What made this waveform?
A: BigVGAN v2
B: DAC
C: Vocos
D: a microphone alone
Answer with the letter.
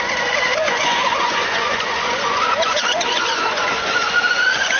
C